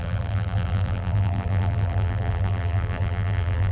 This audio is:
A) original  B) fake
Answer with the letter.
B